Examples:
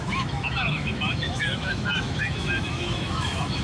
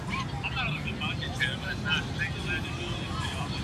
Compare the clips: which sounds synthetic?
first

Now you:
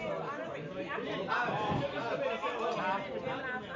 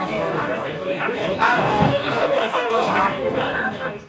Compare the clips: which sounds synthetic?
second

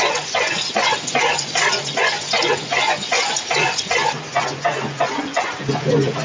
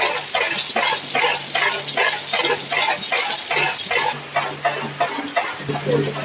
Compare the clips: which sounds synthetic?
first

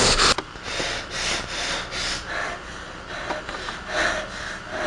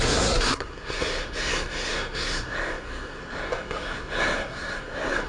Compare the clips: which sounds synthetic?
second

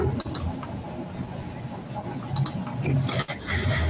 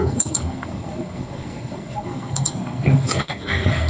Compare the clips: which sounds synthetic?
second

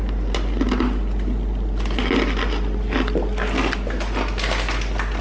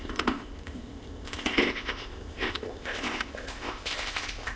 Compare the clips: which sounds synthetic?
second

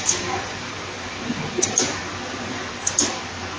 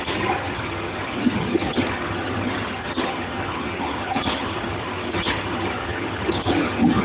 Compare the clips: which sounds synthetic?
second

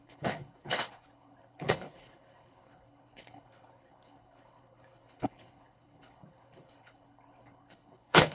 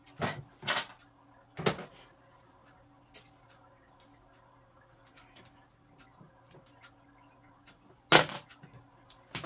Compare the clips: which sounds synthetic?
first